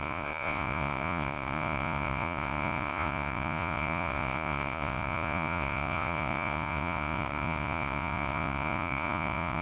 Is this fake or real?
fake